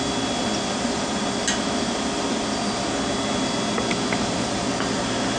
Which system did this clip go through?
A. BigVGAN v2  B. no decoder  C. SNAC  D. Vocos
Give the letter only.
B